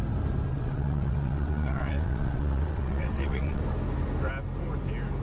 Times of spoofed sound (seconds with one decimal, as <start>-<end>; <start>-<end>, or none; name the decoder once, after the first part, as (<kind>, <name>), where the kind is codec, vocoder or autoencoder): 0.5-3.6 (vocoder, WaveNeXt)